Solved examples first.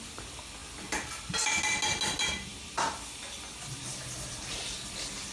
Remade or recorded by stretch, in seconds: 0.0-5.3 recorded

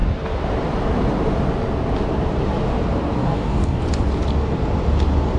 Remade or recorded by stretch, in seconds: 0.0-3.2 recorded; 3.2-3.8 remade; 3.8-5.4 recorded

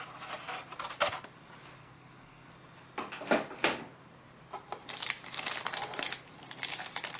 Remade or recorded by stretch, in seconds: 0.0-1.8 recorded; 1.8-2.5 remade; 2.5-7.2 recorded

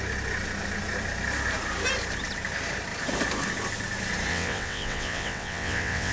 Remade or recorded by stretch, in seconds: 0.0-4.3 recorded; 4.3-6.1 remade

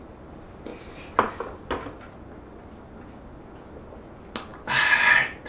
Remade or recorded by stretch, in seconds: 0.0-5.5 recorded

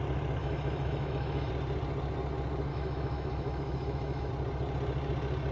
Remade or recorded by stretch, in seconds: 0.0-0.4 recorded; 0.4-1.5 remade; 1.5-2.7 recorded; 2.7-4.3 remade; 4.3-5.5 recorded